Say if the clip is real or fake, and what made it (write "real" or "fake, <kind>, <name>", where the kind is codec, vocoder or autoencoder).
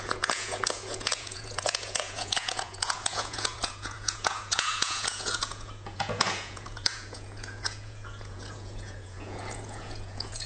fake, vocoder, Vocos